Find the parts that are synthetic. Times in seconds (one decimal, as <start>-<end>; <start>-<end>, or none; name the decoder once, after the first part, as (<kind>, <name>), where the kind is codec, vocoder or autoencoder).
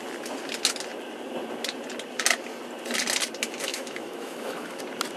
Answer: 3.7-4.8 (autoencoder, DAC-VAE)